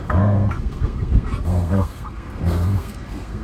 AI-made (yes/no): yes